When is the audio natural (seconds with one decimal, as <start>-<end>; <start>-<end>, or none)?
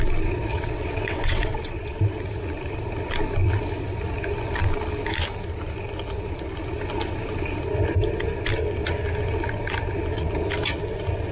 0.0-0.5; 2.0-11.3